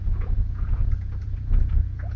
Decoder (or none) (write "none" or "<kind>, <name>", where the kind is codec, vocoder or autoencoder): vocoder, Vocos